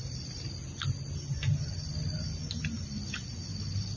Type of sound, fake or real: real